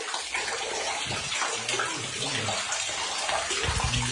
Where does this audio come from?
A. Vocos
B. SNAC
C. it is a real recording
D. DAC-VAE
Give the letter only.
C